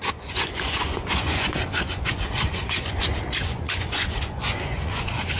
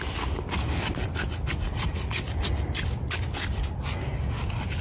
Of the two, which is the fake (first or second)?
first